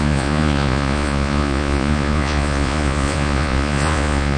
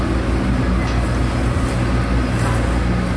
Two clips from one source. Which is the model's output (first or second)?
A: first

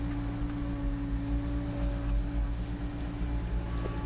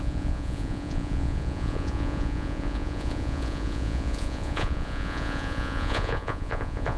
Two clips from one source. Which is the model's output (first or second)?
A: second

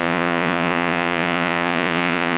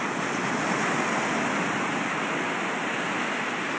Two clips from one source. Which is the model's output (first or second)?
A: first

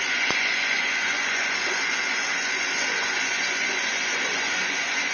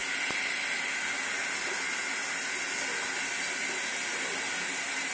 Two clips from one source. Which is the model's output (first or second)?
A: first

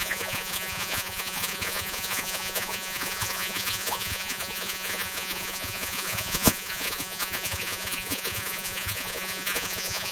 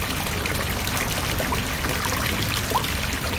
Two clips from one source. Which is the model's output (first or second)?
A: first